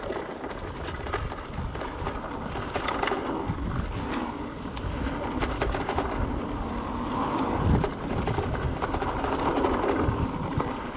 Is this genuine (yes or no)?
yes